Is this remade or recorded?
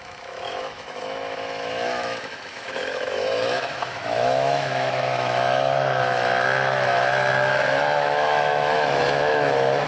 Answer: remade